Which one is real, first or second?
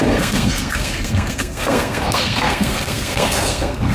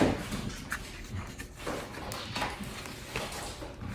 second